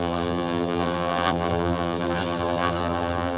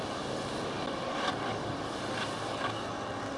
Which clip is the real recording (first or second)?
second